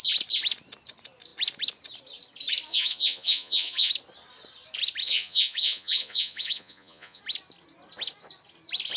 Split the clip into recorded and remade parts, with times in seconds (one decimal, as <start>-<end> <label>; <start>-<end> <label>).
0.0-2.7 recorded; 2.7-3.9 remade; 3.9-5.0 recorded; 5.0-7.2 remade; 7.2-9.0 recorded